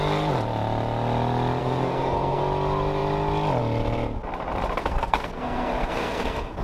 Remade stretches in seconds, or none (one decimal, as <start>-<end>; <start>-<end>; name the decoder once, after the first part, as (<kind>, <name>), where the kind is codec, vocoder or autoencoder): 1.6-2.4 (codec, SNAC); 4.8-6.6